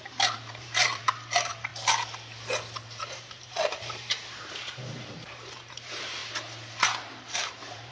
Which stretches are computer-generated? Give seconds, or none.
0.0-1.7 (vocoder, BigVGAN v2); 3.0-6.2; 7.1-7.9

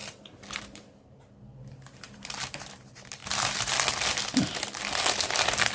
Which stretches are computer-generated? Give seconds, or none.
0.6-3.2 (vocoder, BigVGAN v2)

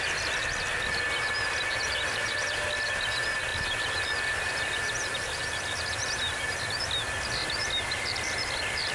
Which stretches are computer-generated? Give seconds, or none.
3.5-6.6 (vocoder, BigVGAN v2); 7.4-8.0

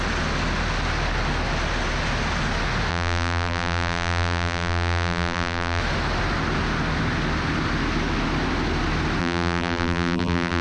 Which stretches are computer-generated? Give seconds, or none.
2.9-5.8 (vocoder, BigVGAN v2); 9.2-10.6

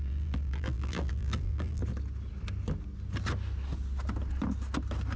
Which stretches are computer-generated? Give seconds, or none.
0.0-1.8 (vocoder, BigVGAN v2)

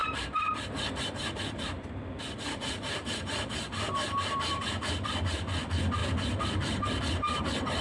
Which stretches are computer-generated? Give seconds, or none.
0.0-4.7 (vocoder, BigVGAN v2); 6.0-7.0